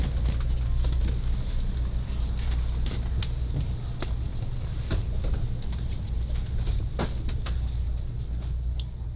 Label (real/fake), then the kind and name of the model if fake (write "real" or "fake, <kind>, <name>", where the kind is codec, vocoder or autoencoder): real